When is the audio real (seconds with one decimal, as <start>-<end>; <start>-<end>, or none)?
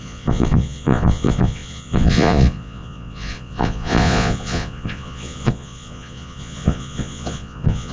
none